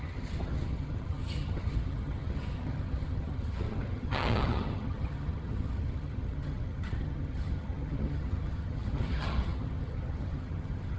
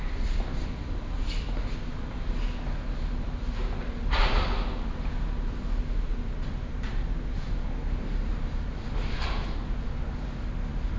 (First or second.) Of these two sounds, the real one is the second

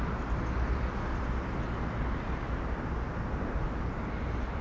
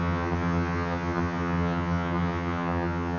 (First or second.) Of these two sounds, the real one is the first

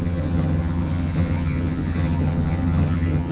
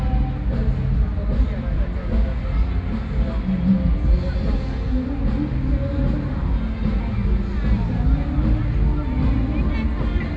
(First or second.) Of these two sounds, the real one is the second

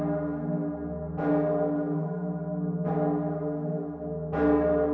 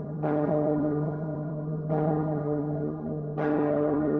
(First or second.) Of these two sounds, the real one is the first